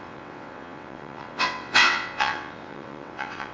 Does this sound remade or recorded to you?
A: remade